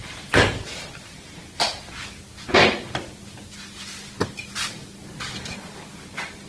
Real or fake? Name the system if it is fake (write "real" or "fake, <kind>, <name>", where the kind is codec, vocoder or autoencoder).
real